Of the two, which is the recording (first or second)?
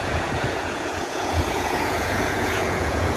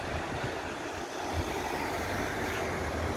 second